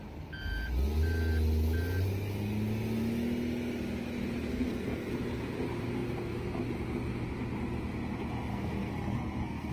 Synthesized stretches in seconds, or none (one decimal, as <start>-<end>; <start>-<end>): 4.5-5.1; 8.5-9.7